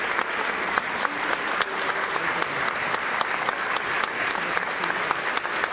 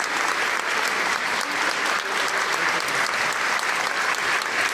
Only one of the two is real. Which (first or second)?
first